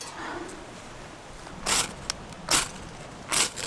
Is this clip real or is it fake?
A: real